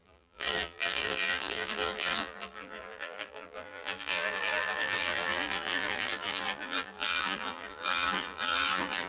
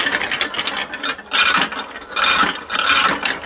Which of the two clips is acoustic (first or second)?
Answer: second